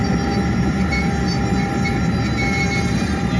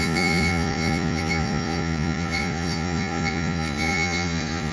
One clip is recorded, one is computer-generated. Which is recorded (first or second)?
first